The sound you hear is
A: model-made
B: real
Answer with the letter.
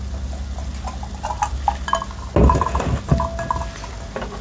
B